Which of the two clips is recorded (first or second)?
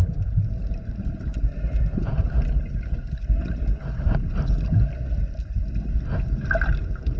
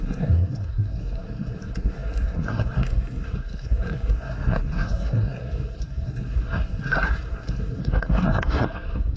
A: first